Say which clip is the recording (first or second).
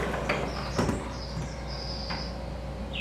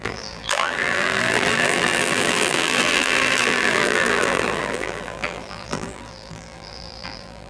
first